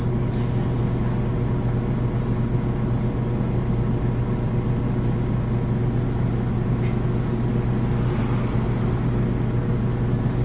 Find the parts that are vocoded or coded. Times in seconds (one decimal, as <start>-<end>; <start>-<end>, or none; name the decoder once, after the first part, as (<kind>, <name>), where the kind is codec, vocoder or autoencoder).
none